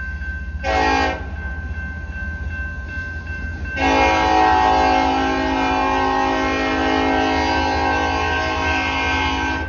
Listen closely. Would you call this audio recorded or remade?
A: recorded